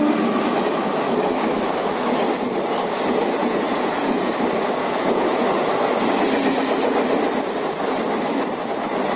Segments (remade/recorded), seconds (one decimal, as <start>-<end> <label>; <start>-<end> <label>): 0.0-3.4 recorded; 3.4-4.3 remade; 4.3-4.8 recorded; 4.8-5.4 remade; 5.4-9.2 recorded